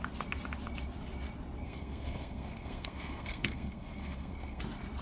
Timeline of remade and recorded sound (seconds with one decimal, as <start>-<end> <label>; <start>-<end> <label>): 0.0-1.6 recorded; 1.6-4.6 remade; 4.6-5.0 recorded